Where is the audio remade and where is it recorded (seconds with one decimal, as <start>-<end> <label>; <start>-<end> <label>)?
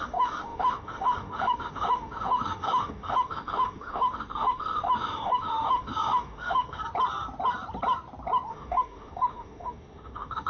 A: 0.0-6.8 remade; 6.8-8.5 recorded; 8.5-10.5 remade